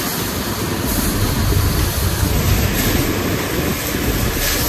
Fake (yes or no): no